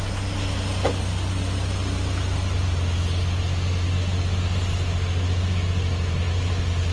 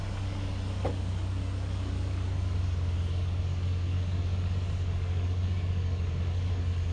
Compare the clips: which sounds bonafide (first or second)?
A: first